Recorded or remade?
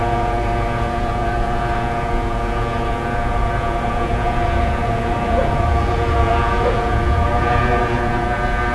remade